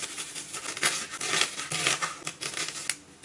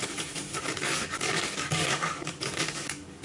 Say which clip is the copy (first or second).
second